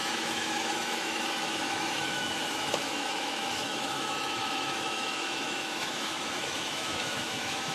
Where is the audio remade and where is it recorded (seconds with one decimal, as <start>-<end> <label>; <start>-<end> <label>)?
0.0-7.7 remade